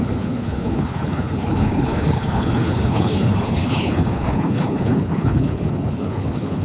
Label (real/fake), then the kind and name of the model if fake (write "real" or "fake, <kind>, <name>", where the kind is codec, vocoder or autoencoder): fake, codec, HILCodec